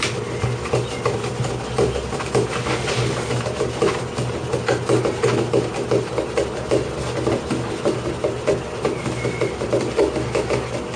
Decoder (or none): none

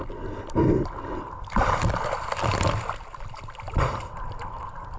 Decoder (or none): none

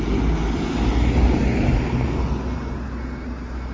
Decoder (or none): none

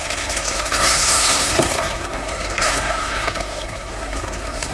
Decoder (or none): codec, SNAC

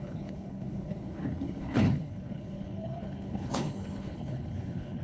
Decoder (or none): codec, HILCodec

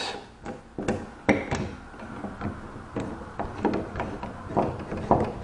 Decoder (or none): none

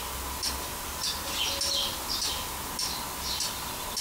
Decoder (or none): none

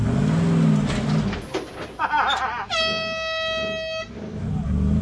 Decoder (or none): none